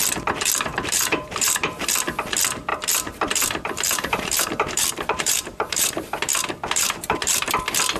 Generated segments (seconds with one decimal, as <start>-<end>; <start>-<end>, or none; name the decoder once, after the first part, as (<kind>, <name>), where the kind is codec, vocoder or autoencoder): 0.7-1.9 (vocoder, BigVGAN v2); 2.7-7.5